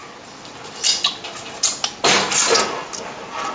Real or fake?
real